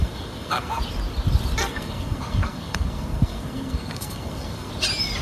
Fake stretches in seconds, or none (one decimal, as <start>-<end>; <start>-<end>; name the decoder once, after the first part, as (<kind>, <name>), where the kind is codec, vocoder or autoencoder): 0.0-0.8 (codec, SNAC); 1.6-4.7